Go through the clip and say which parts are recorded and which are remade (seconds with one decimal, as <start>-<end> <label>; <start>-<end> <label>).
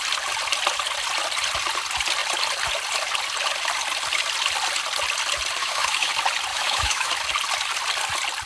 0.0-5.6 recorded; 5.6-6.1 remade; 6.1-6.5 recorded; 6.5-7.1 remade; 7.1-8.5 recorded